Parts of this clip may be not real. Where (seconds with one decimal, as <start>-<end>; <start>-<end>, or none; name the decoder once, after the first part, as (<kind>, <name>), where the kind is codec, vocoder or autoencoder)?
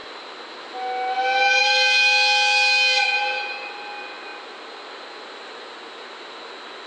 none